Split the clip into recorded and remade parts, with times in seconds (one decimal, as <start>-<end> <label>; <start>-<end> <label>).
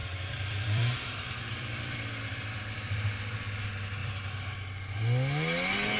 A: 0.0-3.6 remade; 3.6-6.0 recorded